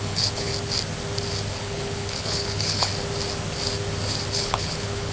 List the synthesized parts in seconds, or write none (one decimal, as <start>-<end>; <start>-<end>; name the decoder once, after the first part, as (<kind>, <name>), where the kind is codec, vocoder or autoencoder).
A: 0.0-0.5 (codec, HILCodec); 1.5-2.9; 4.3-5.1